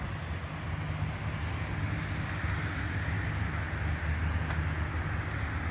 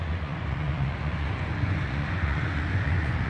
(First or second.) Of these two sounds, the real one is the first